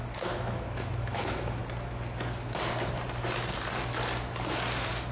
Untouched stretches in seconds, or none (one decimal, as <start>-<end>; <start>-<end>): 1.6-5.1

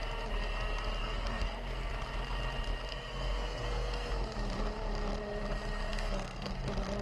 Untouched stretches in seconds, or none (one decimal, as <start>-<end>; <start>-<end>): 0.0-1.0; 1.9-2.9; 4.1-5.9; 6.5-7.0

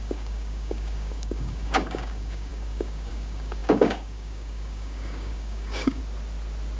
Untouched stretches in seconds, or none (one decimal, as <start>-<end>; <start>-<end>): 6.0-6.8